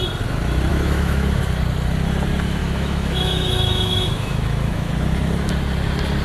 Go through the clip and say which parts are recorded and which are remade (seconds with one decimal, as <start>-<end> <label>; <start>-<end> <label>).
0.0-0.7 recorded; 0.7-1.4 remade; 1.4-2.6 recorded; 2.6-4.9 remade; 4.9-6.2 recorded